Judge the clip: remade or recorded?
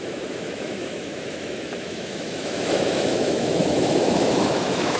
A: remade